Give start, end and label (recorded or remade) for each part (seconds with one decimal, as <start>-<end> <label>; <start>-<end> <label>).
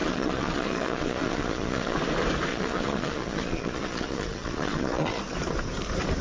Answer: 0.0-2.0 remade; 2.0-2.5 recorded; 2.5-5.2 remade; 5.2-6.2 recorded